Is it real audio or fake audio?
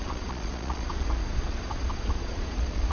fake